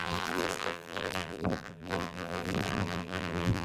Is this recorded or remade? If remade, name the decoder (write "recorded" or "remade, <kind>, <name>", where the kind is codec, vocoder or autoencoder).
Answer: remade, vocoder, BigVGAN v2